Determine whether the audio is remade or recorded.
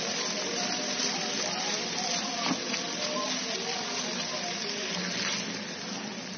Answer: recorded